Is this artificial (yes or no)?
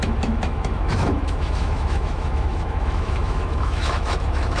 yes